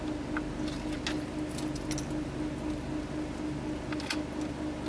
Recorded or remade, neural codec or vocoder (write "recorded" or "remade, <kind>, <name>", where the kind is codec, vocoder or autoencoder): recorded